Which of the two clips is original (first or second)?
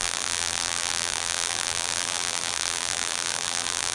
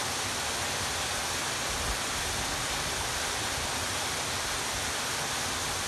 second